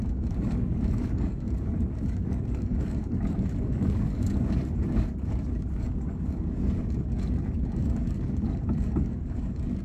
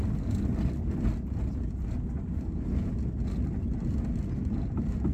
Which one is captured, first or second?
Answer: second